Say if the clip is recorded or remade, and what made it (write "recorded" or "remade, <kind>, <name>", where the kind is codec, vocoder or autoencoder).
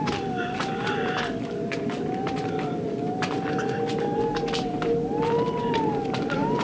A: recorded